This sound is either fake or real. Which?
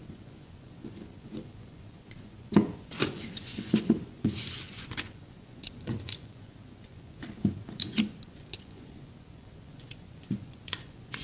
fake